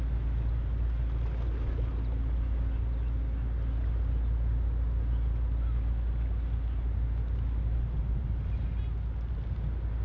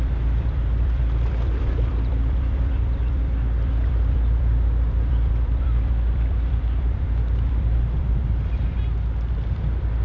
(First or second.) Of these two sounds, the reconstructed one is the second